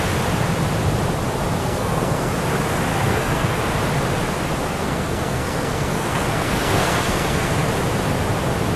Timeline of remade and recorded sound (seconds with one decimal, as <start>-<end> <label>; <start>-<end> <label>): 0.0-1.6 recorded; 1.6-2.3 remade; 2.3-2.9 recorded; 2.9-3.6 remade; 3.6-4.6 recorded; 4.6-7.7 remade; 7.7-8.8 recorded